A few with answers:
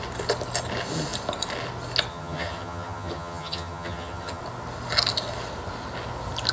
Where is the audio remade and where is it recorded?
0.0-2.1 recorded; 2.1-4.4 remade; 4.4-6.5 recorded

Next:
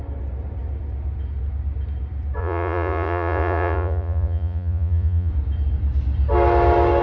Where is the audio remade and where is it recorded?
0.0-2.4 recorded; 2.4-5.3 remade; 5.3-7.0 recorded

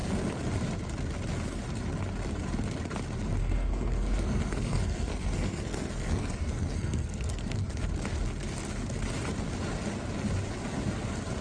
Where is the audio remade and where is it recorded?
0.0-3.4 recorded; 3.4-7.7 remade; 7.7-11.4 recorded

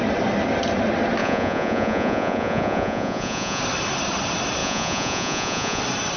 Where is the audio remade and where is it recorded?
0.0-1.2 recorded; 1.2-3.6 remade; 3.6-4.6 recorded; 4.6-5.8 remade; 5.8-6.2 recorded